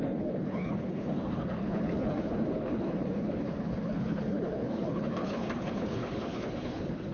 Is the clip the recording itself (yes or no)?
no